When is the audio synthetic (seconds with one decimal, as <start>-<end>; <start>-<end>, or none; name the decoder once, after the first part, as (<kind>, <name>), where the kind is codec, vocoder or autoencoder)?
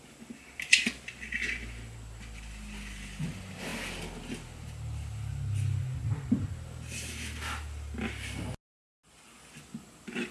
none